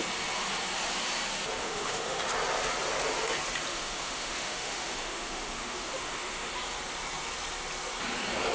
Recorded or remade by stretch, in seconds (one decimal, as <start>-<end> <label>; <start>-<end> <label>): 0.0-1.6 recorded; 1.6-2.2 remade; 2.2-3.7 recorded; 3.7-6.5 remade; 6.5-8.5 recorded